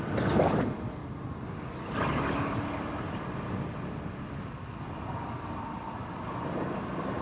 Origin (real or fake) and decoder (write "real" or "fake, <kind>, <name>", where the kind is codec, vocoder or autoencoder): real